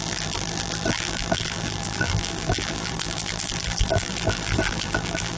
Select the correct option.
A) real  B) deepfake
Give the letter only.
B